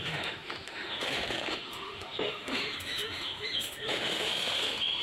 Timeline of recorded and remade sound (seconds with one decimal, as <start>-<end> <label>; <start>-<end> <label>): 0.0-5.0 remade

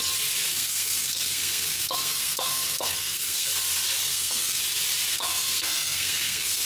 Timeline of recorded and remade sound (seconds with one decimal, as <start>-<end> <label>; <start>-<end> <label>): 0.0-0.5 recorded; 0.5-3.5 remade; 3.5-4.0 recorded; 4.0-4.6 remade; 4.6-5.1 recorded; 5.1-6.7 remade

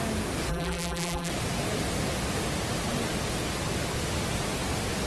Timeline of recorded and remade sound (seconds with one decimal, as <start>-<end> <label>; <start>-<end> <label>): 0.0-0.5 recorded; 0.5-1.3 remade; 1.3-5.1 recorded

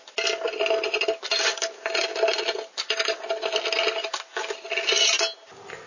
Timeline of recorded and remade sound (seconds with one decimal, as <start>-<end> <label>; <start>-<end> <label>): 0.0-5.9 recorded

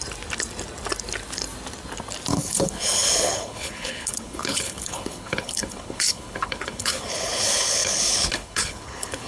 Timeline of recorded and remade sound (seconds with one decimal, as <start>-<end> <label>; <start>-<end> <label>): 0.0-2.3 recorded; 2.3-9.3 remade